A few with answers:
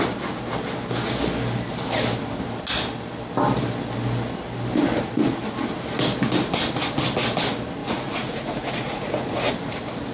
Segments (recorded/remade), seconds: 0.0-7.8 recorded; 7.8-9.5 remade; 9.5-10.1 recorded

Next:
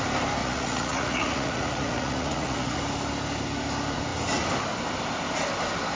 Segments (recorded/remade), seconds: 0.0-0.4 recorded; 0.4-2.8 remade; 2.8-6.0 recorded

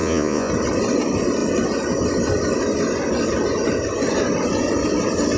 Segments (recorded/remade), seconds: 0.0-0.5 remade; 0.5-5.4 recorded

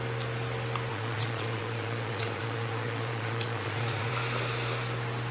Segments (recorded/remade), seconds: 0.0-0.9 recorded; 0.9-4.1 remade; 4.1-5.3 recorded

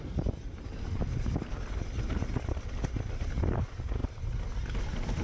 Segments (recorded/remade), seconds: 0.0-5.2 recorded

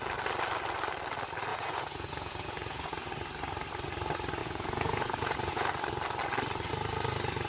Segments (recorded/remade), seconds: 0.0-1.5 recorded; 1.5-3.1 remade; 3.1-4.4 recorded; 4.4-5.7 remade; 5.7-7.5 recorded